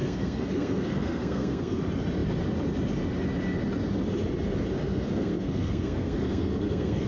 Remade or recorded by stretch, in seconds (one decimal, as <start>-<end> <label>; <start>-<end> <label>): 0.0-1.8 remade; 1.8-4.8 recorded; 4.8-7.1 remade